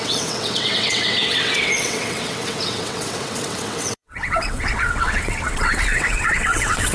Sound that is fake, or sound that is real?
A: fake